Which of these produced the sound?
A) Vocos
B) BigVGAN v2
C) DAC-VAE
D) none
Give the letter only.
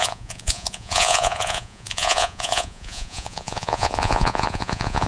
A